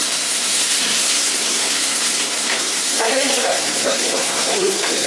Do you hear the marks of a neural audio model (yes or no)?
yes